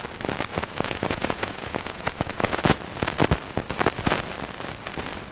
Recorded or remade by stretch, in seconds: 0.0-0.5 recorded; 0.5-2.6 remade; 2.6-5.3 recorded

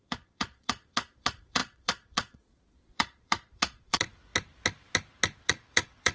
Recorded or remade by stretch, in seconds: 0.0-4.3 remade; 4.3-5.4 recorded; 5.4-6.1 remade

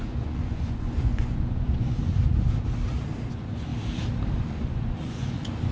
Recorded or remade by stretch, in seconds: 0.0-2.1 remade; 2.1-3.3 recorded; 3.3-3.7 remade; 3.7-4.4 recorded; 4.4-5.7 remade

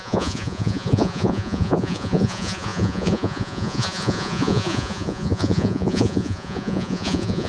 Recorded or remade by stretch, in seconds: 0.0-7.5 remade

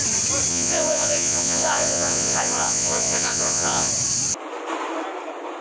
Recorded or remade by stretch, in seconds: 0.0-0.5 recorded; 0.5-3.9 remade; 3.9-5.6 recorded

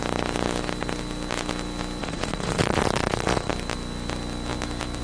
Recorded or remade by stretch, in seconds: 0.0-2.0 recorded; 2.0-3.5 remade; 3.5-5.0 recorded

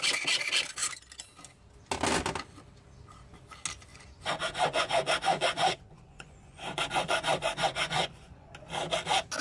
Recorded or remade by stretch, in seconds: 0.0-3.9 recorded; 3.9-8.5 remade; 8.5-9.4 recorded

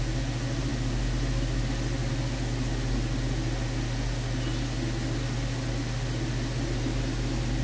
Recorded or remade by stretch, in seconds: 0.0-7.6 recorded